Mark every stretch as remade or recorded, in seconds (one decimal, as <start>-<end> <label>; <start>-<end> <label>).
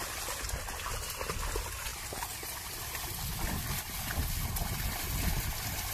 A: 0.0-5.9 recorded